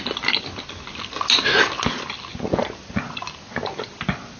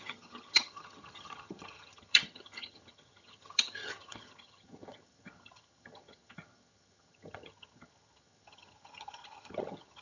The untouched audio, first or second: first